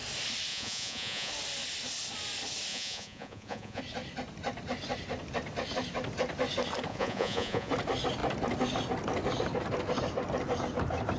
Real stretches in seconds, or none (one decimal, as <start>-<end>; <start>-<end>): 0.0-0.5; 1.3-2.7; 3.8-6.9; 7.7-11.2